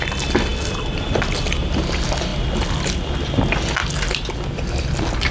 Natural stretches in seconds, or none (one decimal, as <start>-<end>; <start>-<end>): 0.0-5.3